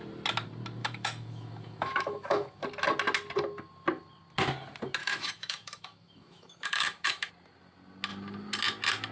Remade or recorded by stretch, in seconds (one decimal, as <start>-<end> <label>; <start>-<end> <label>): 0.0-0.8 recorded; 0.8-2.6 remade; 2.6-5.0 recorded; 5.0-7.3 remade; 7.3-9.1 recorded